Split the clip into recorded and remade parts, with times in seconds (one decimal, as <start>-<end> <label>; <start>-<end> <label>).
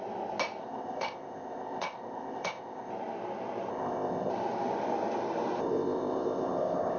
0.0-0.6 recorded; 0.6-2.9 remade; 2.9-3.7 recorded; 3.7-4.3 remade; 4.3-5.6 recorded; 5.6-7.0 remade